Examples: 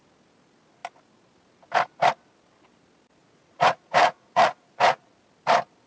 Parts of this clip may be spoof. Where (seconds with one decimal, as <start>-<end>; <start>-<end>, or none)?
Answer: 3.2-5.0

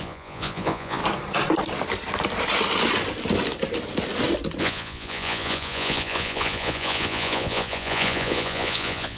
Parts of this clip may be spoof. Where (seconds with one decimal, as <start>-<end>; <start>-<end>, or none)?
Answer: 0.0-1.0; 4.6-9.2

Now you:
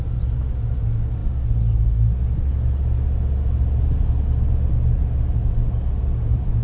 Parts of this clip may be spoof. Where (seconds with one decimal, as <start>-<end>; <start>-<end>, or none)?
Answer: none

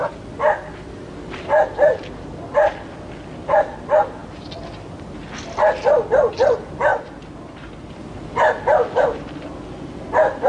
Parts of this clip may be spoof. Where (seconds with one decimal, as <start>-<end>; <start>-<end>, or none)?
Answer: none

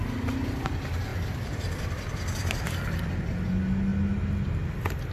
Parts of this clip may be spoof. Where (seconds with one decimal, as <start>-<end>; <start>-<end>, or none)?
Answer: 1.1-3.1